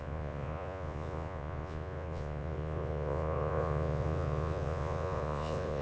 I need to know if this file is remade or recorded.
remade